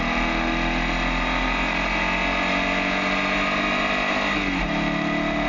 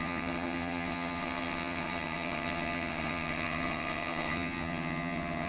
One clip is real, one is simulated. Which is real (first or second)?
first